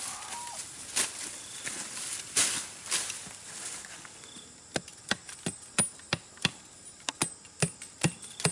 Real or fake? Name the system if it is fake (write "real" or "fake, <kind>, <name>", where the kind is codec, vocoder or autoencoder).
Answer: real